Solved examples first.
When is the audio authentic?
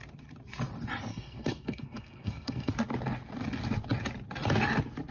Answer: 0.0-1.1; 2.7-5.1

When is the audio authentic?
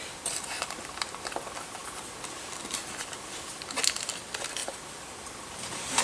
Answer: 0.0-4.6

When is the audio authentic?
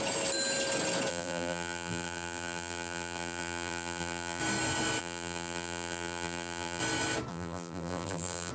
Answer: 0.0-1.1; 4.4-5.0; 6.8-7.3